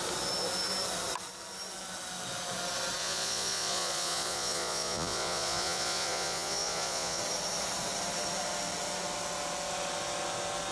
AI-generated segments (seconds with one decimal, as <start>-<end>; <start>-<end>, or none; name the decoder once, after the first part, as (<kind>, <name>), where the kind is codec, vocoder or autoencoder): 3.0-7.2 (vocoder, Vocos)